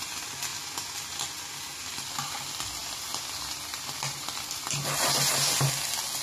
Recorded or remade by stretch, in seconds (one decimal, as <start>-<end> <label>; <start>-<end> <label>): 0.0-6.2 recorded